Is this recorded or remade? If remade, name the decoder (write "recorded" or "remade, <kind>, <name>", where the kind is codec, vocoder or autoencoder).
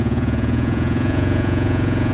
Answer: remade, vocoder, Vocos